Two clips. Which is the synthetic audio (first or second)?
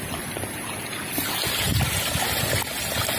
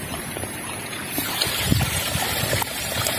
second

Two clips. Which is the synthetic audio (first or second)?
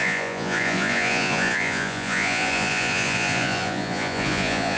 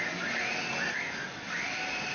first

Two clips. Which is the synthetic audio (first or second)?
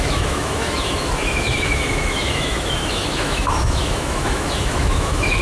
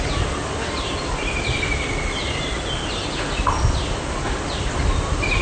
first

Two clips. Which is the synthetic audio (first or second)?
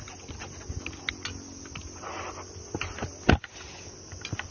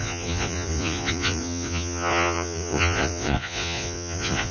second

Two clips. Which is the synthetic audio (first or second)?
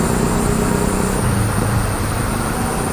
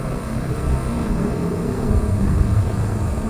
second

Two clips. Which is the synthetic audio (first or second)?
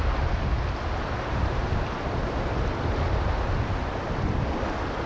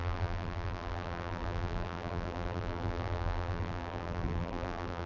second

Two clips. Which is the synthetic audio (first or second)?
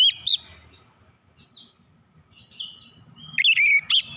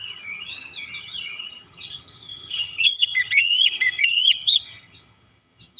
second